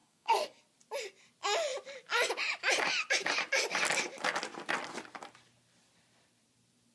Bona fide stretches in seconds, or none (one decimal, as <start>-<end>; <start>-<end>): 0.6-6.9